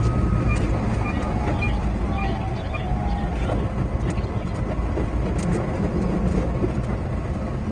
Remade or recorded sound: recorded